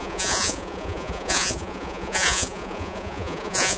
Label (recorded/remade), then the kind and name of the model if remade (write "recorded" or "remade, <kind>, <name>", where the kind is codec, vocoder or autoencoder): remade, vocoder, Vocos